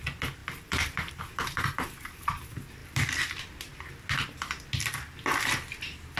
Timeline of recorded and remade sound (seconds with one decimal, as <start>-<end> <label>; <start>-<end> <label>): 0.0-0.4 recorded; 0.4-1.2 remade; 1.2-2.8 recorded; 2.8-3.4 remade; 3.4-6.2 recorded